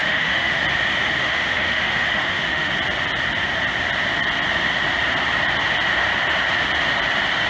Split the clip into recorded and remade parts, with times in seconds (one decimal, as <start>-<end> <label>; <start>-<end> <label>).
0.0-0.6 remade; 0.6-1.2 recorded; 1.2-2.7 remade; 2.7-7.5 recorded